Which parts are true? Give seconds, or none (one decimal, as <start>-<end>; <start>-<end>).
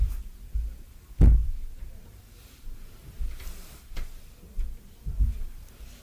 0.0-6.0